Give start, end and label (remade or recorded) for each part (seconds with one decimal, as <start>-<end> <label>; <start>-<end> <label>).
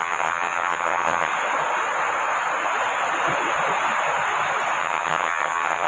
0.0-1.3 remade; 1.3-4.8 recorded; 4.8-5.9 remade